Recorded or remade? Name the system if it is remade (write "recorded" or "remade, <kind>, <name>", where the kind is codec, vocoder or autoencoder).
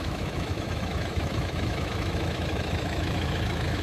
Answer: remade, autoencoder, DAC-VAE